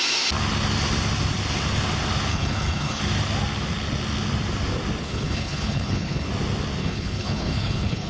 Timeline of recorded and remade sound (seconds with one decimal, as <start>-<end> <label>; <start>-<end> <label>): 0.0-2.3 recorded; 2.3-3.0 remade; 3.0-5.0 recorded; 5.0-6.3 remade; 6.3-6.8 recorded; 6.8-8.1 remade